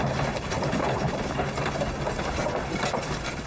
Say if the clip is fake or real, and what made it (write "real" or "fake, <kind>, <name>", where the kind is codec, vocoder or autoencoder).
real